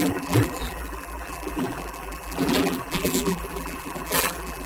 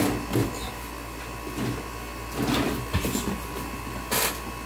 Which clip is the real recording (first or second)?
second